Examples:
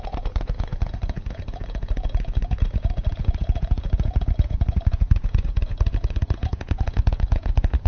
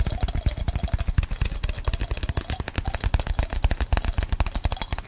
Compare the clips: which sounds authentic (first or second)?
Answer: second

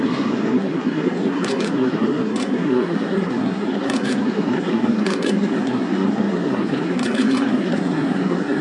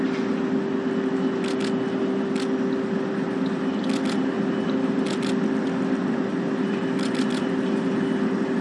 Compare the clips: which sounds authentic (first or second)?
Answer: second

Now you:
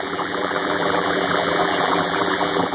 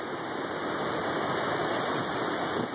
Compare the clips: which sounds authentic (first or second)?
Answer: second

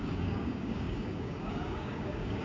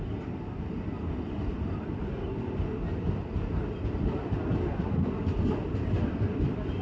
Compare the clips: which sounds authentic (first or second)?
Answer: second